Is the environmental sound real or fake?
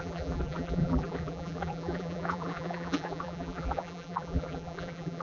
fake